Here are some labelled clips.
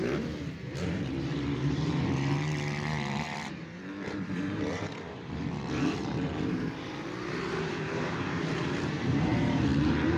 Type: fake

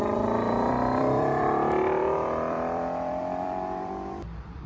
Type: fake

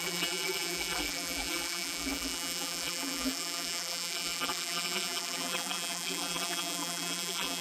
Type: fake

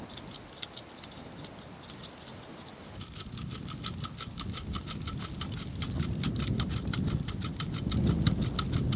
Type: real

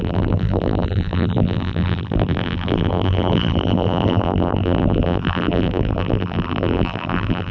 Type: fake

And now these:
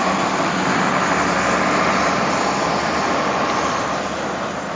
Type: real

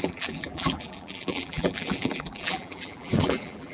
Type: fake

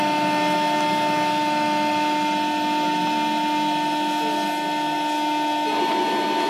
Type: real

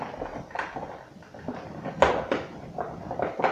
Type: real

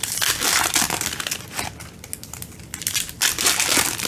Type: real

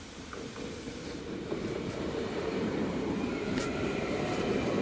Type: fake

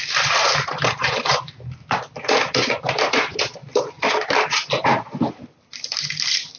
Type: fake